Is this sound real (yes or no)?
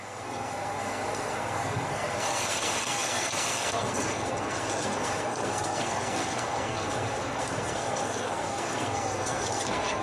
no